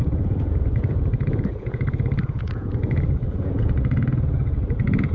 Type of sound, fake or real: fake